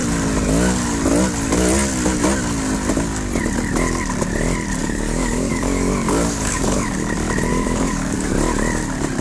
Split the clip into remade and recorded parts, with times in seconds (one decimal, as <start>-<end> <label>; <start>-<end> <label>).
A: 0.0-4.8 recorded; 4.8-6.9 remade; 6.9-7.5 recorded; 7.5-8.3 remade; 8.3-9.2 recorded